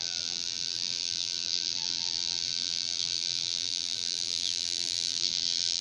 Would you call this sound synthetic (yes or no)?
yes